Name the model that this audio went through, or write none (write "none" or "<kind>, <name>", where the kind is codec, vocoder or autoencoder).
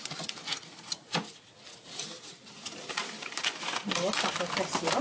none